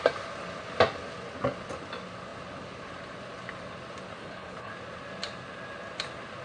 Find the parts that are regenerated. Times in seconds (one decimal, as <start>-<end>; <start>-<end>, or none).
4.2-4.7